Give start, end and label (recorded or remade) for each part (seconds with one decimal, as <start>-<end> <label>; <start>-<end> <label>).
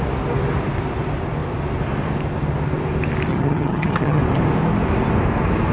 0.0-3.3 recorded; 3.3-4.2 remade; 4.2-5.7 recorded